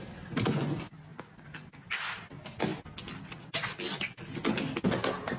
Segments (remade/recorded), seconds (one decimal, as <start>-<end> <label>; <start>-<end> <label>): 0.0-5.4 recorded